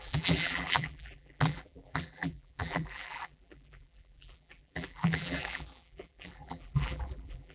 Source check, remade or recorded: remade